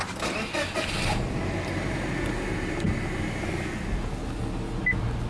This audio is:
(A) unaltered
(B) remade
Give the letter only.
A